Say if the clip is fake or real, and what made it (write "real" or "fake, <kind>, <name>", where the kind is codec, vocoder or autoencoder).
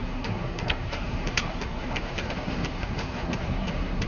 fake, codec, SNAC